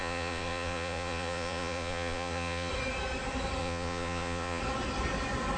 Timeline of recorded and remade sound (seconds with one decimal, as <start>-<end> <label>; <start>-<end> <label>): 0.0-2.7 remade; 2.7-3.6 recorded; 3.6-4.6 remade; 4.6-5.6 recorded